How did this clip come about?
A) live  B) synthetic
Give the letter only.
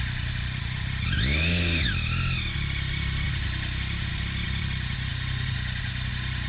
A